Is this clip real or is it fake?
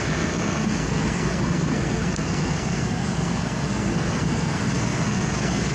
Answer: fake